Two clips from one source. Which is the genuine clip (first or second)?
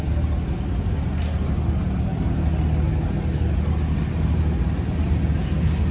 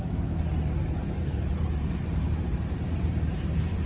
first